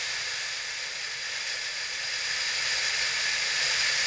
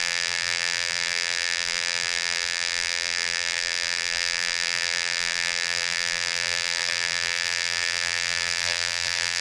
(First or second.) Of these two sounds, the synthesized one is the second